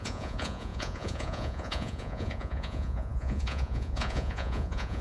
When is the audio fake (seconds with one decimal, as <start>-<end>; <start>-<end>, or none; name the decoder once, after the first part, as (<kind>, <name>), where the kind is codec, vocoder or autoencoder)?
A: 0.0-5.0 (vocoder, Vocos)